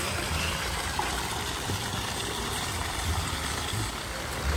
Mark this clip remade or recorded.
remade